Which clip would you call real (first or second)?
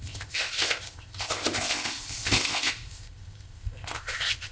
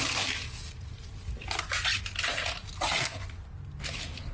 second